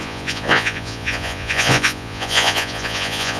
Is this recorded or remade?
remade